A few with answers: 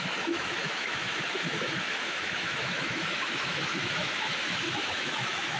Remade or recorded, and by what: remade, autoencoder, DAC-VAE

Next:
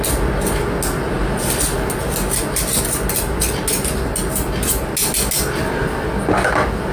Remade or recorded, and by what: recorded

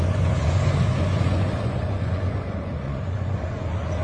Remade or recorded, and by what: remade, vocoder, Vocos